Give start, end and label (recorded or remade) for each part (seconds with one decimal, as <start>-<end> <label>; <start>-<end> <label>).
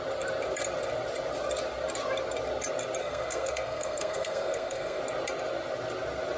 0.0-3.0 recorded; 3.0-5.0 remade; 5.0-6.4 recorded